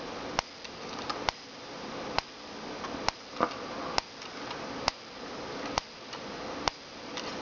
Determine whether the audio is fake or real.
real